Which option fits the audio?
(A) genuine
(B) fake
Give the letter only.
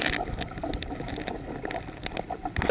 A